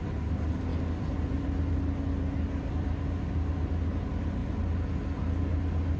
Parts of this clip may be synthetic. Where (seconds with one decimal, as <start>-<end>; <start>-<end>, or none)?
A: none